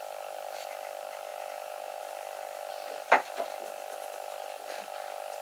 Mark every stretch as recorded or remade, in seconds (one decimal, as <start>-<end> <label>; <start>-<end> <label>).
0.0-1.3 recorded; 1.3-2.0 remade; 2.0-5.4 recorded